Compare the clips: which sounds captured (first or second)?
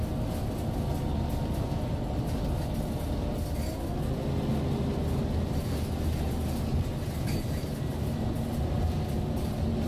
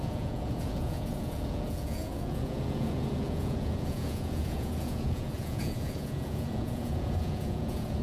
first